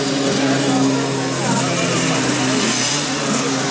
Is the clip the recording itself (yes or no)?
yes